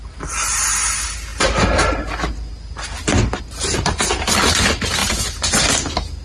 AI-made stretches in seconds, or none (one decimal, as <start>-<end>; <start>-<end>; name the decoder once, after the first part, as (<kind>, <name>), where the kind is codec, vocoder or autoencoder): 5.0-5.6 (vocoder, Vocos)